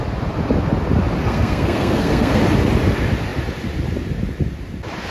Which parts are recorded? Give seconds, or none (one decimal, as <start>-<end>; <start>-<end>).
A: 0.0-1.2; 2.4-5.1